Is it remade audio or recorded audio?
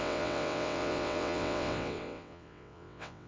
remade